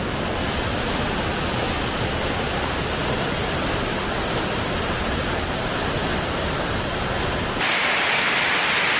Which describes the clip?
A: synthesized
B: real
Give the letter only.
B